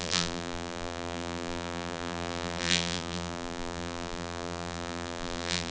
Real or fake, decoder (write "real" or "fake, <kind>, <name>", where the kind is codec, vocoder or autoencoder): fake, vocoder, BigVGAN v2